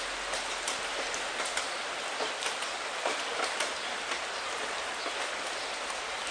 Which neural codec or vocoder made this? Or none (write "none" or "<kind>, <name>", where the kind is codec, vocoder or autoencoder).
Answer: none